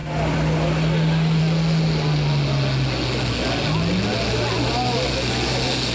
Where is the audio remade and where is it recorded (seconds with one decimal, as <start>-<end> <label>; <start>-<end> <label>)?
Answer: 0.0-5.9 recorded